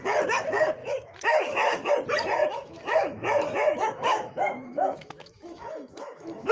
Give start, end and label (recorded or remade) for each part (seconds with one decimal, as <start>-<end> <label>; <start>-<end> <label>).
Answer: 0.0-0.8 recorded; 0.8-1.9 remade; 1.9-2.4 recorded; 2.4-6.5 remade